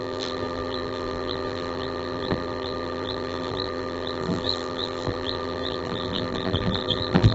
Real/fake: fake